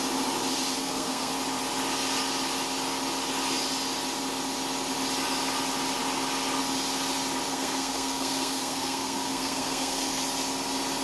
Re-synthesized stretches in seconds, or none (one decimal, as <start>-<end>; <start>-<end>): 0.8-1.3; 7.5-10.2